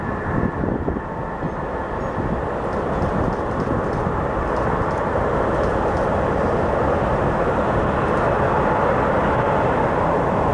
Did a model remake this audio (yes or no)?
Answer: no